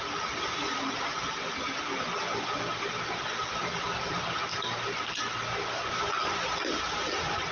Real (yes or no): yes